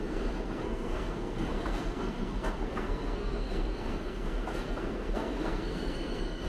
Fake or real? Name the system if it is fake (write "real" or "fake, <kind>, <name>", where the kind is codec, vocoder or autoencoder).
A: fake, codec, SNAC